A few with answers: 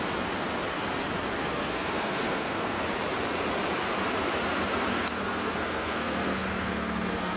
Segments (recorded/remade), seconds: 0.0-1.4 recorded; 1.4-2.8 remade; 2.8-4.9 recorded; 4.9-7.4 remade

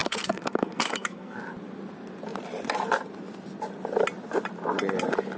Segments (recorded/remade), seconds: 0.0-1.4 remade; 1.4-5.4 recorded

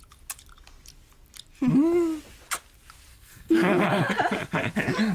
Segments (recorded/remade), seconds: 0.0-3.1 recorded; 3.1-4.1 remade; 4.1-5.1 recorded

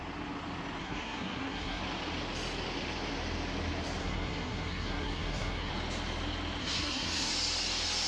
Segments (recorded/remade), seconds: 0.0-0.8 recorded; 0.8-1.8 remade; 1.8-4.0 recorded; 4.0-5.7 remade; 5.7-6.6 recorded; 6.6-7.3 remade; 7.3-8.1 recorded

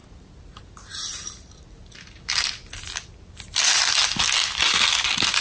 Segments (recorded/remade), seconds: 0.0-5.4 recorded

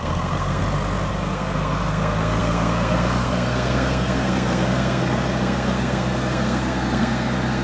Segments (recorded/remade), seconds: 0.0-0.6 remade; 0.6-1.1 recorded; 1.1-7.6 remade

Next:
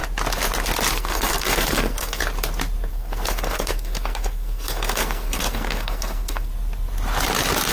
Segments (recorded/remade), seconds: 0.0-0.9 recorded; 0.9-2.2 remade; 2.2-2.9 recorded; 2.9-6.5 remade; 6.5-7.7 recorded

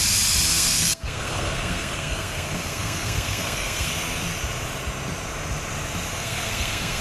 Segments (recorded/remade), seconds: 0.0-0.5 recorded; 0.5-3.9 remade; 3.9-6.1 recorded; 6.1-7.0 remade